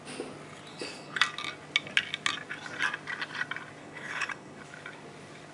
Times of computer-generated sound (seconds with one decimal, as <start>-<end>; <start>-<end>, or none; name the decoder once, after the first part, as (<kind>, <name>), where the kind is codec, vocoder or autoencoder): 0.7-1.2 (codec, HILCodec); 3.8-4.6